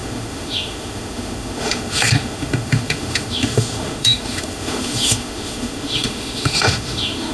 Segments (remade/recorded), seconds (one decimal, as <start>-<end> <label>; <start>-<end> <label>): 0.0-7.3 remade